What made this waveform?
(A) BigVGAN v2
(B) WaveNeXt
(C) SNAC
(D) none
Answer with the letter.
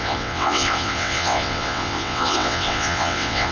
B